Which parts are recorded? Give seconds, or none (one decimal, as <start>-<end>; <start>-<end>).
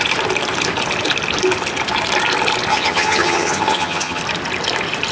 0.0-2.7; 4.2-5.1